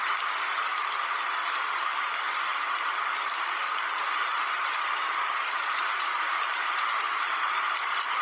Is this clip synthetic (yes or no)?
no